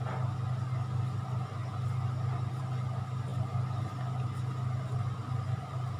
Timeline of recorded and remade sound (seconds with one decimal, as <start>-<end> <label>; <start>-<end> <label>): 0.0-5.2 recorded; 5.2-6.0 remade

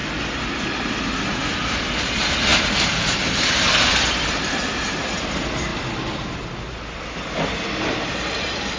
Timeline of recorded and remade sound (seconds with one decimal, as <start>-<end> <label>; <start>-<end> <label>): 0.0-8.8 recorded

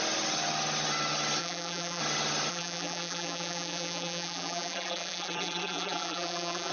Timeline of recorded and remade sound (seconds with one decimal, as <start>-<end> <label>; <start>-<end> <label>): 0.0-1.4 recorded; 1.4-2.0 remade; 2.0-2.5 recorded; 2.5-6.7 remade